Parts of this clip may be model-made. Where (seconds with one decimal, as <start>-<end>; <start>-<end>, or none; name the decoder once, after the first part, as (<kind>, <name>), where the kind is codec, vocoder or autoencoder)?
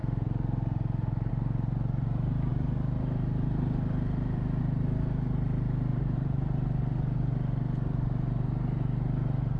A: 5.9-6.8 (vocoder, BigVGAN v2)